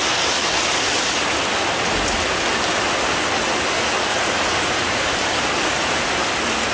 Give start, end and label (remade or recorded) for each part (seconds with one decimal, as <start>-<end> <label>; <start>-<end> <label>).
0.0-4.1 recorded; 4.1-5.0 remade; 5.0-6.7 recorded